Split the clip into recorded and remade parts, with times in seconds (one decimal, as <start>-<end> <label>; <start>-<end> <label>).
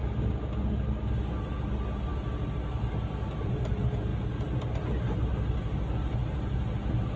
0.0-7.2 recorded